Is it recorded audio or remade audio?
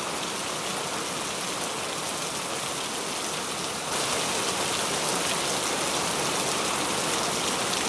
recorded